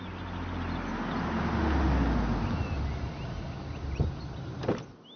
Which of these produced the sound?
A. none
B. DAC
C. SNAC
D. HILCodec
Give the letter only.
A